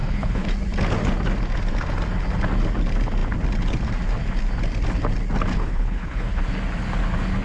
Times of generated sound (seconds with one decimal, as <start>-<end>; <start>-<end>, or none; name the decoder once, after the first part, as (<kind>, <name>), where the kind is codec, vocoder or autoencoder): 0.0-0.5 (codec, HILCodec); 5.5-6.4